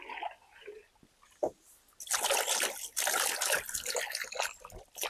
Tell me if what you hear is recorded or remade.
recorded